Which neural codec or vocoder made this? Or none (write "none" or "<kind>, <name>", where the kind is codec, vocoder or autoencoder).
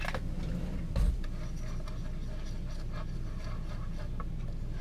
none